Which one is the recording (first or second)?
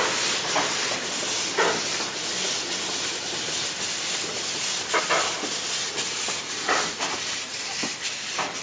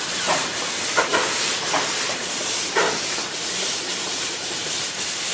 first